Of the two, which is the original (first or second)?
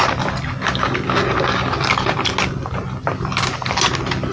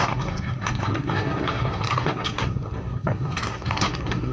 first